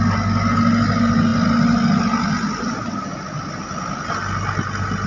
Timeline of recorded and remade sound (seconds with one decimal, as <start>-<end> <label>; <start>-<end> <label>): 0.0-5.1 recorded